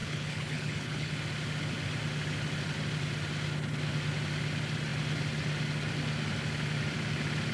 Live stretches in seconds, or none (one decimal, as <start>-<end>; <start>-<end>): 1.1-7.5

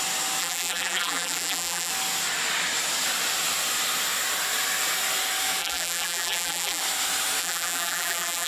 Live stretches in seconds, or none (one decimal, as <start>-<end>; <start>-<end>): 0.0-0.4; 1.9-5.6; 6.8-7.4

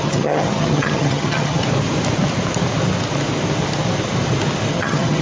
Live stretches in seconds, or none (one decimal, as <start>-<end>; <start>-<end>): 1.6-4.7

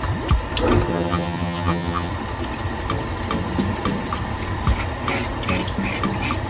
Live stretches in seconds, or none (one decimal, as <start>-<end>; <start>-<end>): 0.0-0.9; 2.1-6.5